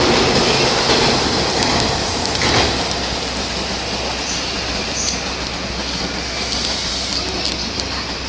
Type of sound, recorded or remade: recorded